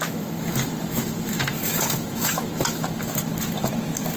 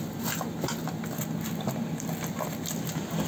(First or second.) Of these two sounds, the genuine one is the second